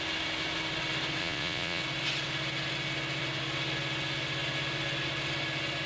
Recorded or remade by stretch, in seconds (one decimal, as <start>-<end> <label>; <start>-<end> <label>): 0.0-1.2 recorded; 1.2-1.8 remade; 1.8-5.9 recorded